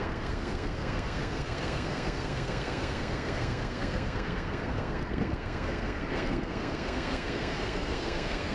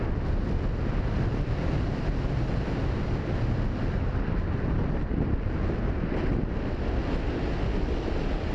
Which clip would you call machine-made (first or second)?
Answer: first